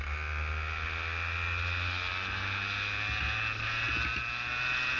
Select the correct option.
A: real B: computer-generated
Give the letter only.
A